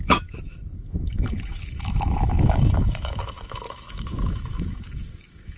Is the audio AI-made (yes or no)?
yes